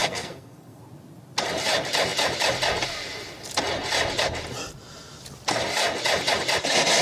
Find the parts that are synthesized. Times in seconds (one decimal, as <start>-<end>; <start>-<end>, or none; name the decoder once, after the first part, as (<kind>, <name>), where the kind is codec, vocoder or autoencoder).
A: 0.0-0.8 (codec, SNAC)